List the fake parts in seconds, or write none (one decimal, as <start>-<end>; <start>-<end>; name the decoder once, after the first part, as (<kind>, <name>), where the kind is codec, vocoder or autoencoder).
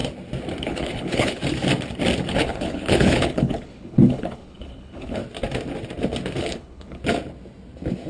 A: 0.6-1.4 (codec, HILCodec); 2.3-5.2; 6.4-7.0